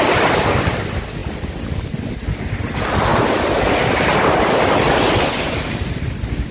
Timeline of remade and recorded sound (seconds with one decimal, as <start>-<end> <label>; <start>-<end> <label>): 0.0-6.5 recorded